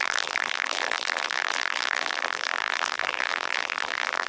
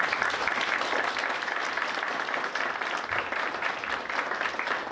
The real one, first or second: second